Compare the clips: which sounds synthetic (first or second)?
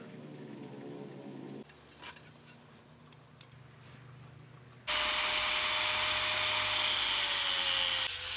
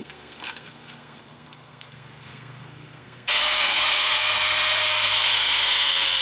second